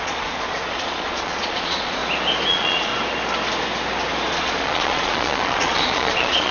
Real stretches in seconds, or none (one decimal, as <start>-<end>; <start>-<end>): 2.0-2.5; 2.9-4.3